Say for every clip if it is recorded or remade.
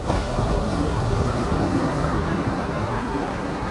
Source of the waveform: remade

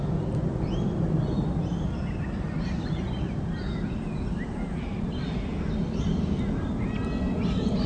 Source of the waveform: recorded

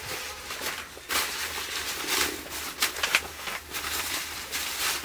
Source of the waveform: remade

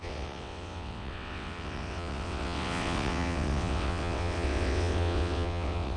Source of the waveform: remade